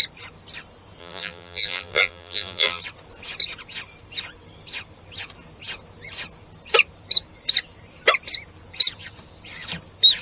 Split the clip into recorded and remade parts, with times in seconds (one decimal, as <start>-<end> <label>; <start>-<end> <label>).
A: 0.0-1.0 recorded; 1.0-2.8 remade; 2.8-10.2 recorded